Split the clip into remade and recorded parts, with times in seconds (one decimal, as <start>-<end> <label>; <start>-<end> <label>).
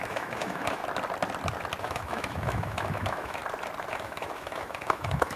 0.0-0.8 remade; 0.8-1.8 recorded; 1.8-3.4 remade; 3.4-3.9 recorded; 3.9-5.4 remade